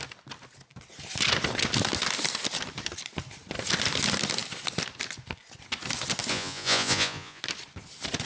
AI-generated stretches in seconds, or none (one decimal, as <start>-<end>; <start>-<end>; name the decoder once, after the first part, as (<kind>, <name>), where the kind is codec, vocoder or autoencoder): 6.3-7.4 (vocoder, Vocos)